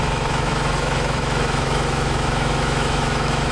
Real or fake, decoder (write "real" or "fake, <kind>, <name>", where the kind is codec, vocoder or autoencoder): fake, autoencoder, DAC-VAE